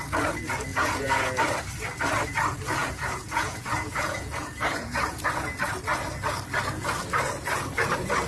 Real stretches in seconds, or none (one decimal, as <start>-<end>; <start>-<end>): 0.0-0.7; 1.3-2.8; 5.2-8.3